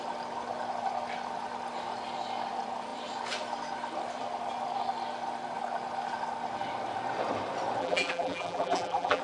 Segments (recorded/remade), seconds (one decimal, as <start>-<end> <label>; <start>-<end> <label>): 0.0-7.8 recorded; 7.8-9.2 remade